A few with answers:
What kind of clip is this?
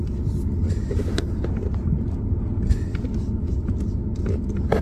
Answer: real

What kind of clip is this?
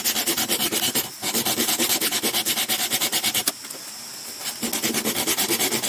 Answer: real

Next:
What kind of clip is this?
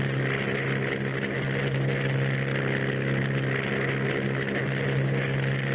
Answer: real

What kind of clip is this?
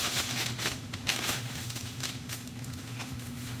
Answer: fake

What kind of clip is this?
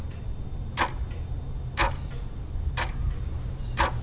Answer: real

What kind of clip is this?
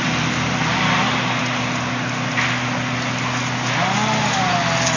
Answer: real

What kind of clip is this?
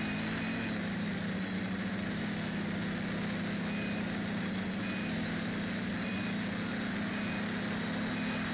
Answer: real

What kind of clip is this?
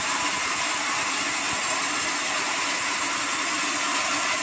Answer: real